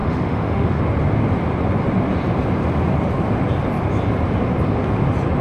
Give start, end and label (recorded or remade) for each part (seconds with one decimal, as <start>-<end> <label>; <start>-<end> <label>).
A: 0.0-0.8 remade; 0.8-5.4 recorded